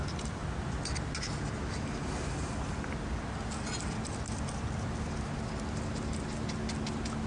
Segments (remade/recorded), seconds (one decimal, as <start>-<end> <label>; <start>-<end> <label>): 0.0-7.3 recorded